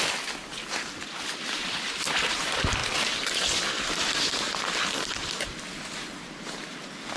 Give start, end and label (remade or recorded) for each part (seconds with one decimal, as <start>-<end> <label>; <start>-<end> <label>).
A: 0.0-7.2 recorded